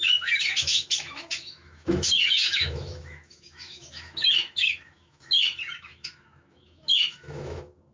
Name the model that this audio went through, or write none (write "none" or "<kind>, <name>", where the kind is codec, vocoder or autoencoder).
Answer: autoencoder, DAC-VAE